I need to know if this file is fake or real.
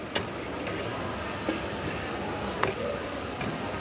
real